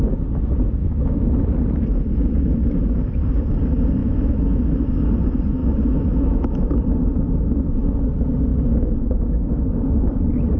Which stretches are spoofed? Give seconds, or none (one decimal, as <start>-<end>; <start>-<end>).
0.8-1.3; 4.0-4.9; 5.6-6.8; 8.5-9.6